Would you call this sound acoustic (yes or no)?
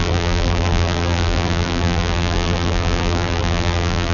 no